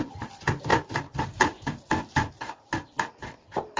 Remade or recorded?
remade